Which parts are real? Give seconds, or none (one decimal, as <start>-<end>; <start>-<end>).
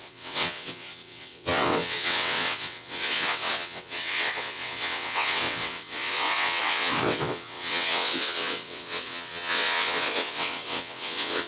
none